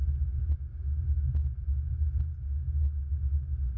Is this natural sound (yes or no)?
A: yes